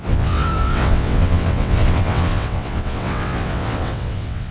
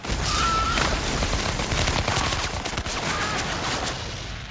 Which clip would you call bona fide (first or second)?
second